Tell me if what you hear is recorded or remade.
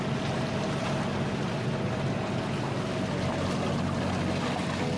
recorded